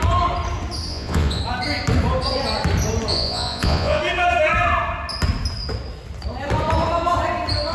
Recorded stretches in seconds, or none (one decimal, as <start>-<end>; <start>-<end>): 0.0-0.9; 1.4-3.1; 4.0-7.7